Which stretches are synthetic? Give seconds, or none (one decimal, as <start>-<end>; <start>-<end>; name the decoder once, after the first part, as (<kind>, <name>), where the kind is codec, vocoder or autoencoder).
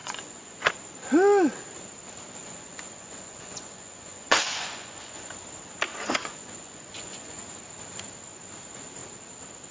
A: 0.0-0.7 (vocoder, Vocos); 2.4-5.3; 5.9-7.4